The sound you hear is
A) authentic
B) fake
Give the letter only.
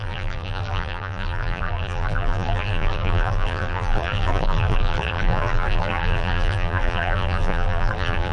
B